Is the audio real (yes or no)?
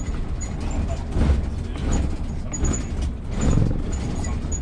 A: yes